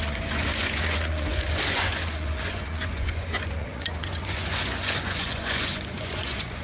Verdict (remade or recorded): remade